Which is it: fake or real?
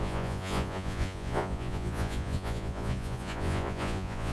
fake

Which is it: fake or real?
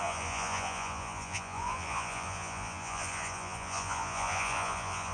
fake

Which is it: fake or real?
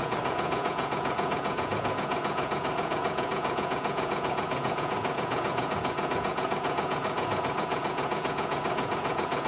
fake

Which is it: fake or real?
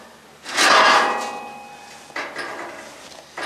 real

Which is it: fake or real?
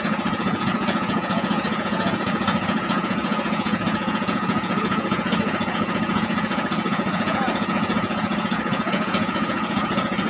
fake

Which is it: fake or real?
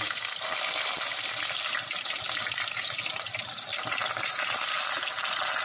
real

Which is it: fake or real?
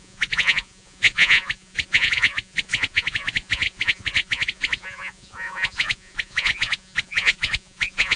fake